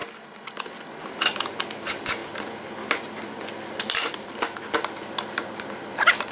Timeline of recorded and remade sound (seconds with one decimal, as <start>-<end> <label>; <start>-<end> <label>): 0.0-6.3 recorded